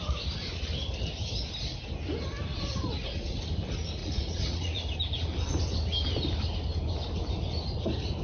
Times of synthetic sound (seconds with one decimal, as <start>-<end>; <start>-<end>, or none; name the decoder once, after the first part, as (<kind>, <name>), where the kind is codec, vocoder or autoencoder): 2.5-3.4 (vocoder, Vocos); 4.0-4.8